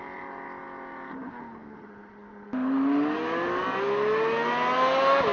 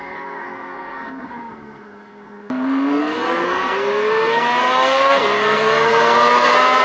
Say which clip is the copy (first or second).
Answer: second